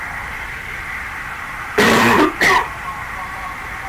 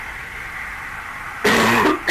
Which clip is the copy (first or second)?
first